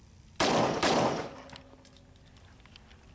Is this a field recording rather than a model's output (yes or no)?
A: yes